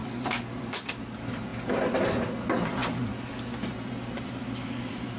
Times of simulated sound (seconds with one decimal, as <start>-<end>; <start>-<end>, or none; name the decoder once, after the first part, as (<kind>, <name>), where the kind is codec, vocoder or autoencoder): 0.0-1.5 (vocoder, BigVGAN v2); 2.1-2.8; 3.7-5.2